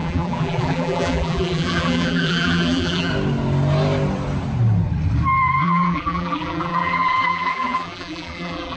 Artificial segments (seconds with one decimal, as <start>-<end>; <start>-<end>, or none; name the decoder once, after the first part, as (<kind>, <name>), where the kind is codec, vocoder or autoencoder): 0.0-3.1 (vocoder, BigVGAN v2); 5.6-8.8